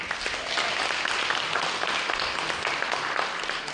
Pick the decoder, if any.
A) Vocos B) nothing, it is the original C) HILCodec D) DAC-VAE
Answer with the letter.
B